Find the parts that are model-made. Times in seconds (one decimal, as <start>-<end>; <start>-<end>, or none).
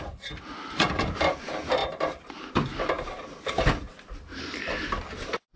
none